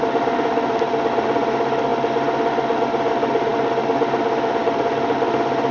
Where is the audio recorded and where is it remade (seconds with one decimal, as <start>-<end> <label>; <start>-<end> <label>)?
0.0-5.7 recorded